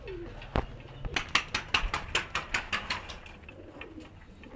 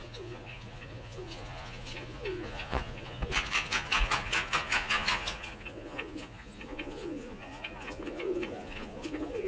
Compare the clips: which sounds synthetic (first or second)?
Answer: second